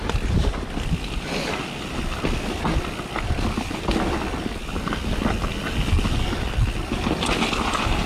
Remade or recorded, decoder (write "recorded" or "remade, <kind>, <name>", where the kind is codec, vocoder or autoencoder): recorded